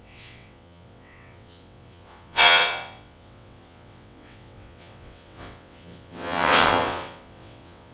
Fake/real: fake